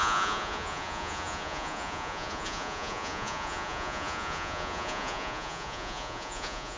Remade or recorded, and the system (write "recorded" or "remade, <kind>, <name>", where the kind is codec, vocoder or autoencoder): remade, vocoder, Vocos